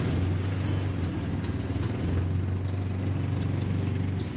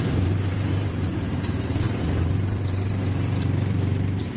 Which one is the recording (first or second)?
first